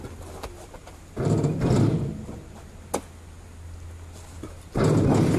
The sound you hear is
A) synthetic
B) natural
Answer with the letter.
B